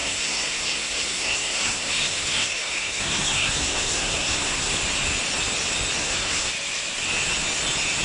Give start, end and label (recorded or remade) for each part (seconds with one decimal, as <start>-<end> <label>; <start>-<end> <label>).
0.0-4.8 remade; 4.8-6.0 recorded; 6.0-6.5 remade; 6.5-8.0 recorded